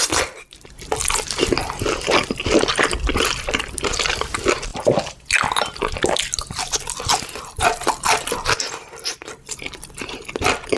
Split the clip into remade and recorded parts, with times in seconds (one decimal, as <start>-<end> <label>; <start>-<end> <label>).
0.0-10.8 recorded